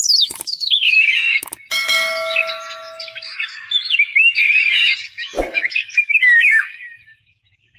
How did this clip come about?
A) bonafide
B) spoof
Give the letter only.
B